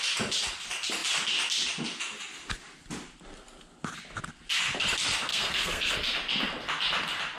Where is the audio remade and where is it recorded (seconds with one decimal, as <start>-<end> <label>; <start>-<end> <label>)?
0.0-5.3 recorded; 5.3-5.9 remade; 5.9-7.4 recorded